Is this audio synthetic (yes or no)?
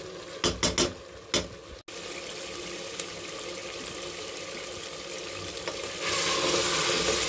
no